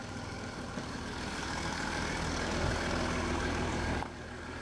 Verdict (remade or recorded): remade